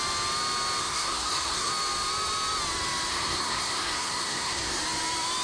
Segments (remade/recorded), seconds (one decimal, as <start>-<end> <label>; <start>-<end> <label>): 0.0-0.8 recorded; 0.8-1.7 remade; 1.7-3.1 recorded; 3.1-4.8 remade; 4.8-5.4 recorded